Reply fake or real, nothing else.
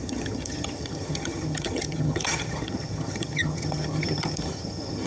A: fake